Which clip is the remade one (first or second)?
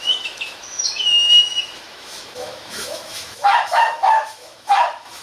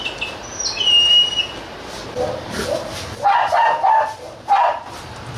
first